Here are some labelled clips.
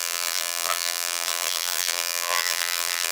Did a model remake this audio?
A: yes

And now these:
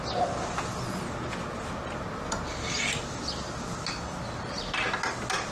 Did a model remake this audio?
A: no